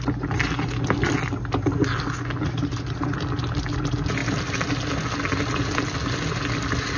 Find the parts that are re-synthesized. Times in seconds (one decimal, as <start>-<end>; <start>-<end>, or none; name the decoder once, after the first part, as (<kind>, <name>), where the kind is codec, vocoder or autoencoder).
none